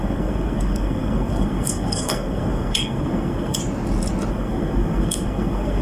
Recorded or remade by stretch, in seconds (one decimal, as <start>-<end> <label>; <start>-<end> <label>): 0.0-3.6 remade; 3.6-4.3 recorded; 4.3-5.8 remade